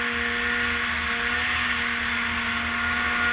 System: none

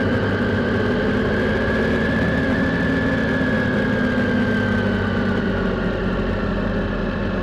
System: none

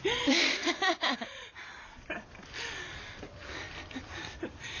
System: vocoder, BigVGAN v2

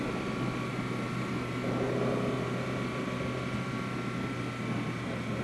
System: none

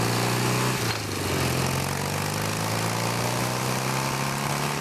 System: none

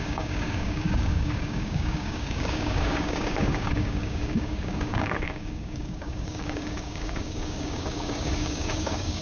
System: codec, DAC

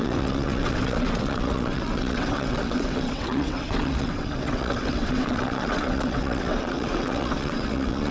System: vocoder, WaveNeXt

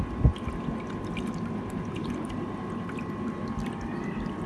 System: none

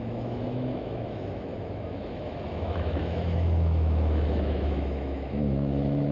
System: autoencoder, DAC-VAE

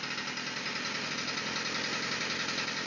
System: none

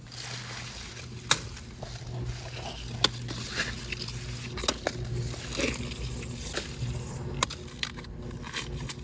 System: none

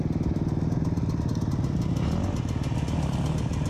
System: none